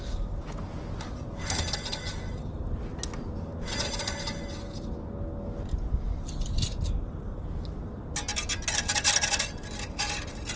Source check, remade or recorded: recorded